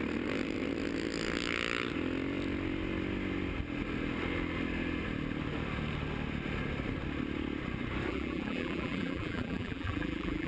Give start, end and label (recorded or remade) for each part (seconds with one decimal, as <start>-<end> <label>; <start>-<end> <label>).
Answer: 0.0-8.1 recorded; 8.1-10.5 remade